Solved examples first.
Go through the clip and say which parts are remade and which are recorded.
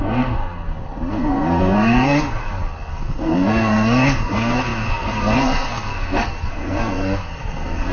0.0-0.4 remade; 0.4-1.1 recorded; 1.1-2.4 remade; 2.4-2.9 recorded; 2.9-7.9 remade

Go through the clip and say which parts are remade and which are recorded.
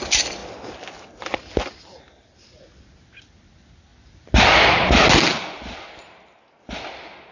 0.0-7.3 recorded